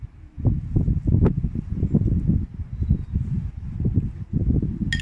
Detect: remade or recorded recorded